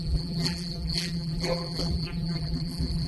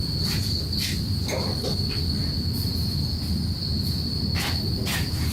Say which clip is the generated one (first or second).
first